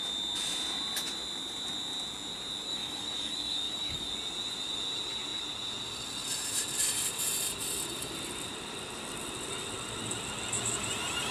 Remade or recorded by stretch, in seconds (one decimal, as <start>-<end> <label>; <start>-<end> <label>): 0.0-2.7 recorded; 2.7-4.1 remade; 4.1-11.3 recorded